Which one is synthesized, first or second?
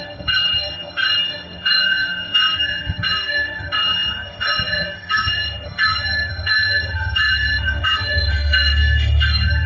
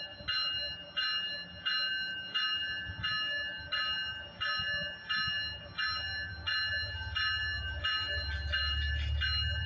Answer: first